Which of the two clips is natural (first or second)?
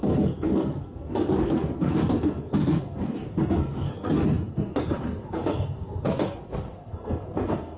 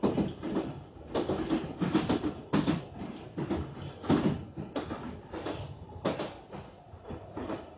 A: second